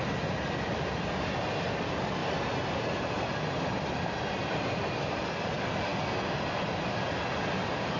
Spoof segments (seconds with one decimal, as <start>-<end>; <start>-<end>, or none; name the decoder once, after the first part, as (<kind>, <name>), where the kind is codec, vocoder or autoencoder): 2.2-3.3 (vocoder, BigVGAN v2)

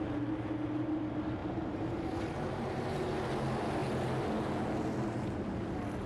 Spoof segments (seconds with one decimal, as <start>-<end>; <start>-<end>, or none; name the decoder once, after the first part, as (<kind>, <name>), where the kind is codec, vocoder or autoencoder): 1.4-3.2 (vocoder, BigVGAN v2)

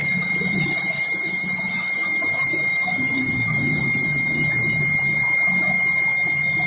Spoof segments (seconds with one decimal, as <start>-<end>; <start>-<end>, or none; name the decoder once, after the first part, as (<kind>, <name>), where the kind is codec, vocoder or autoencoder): 0.0-3.8 (vocoder, BigVGAN v2)

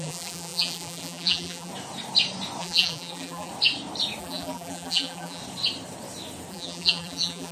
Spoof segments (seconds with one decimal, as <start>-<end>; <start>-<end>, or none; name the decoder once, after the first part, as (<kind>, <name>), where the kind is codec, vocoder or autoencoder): 0.0-1.7 (vocoder, BigVGAN v2); 2.6-3.5; 4.2-5.4; 6.5-7.5

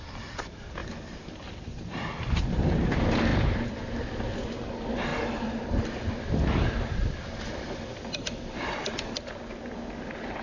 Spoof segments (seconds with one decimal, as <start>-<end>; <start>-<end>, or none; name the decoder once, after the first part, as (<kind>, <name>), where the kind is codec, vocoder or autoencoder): 0.8-2.6 (vocoder, BigVGAN v2); 3.3-4.2; 5.1-9.9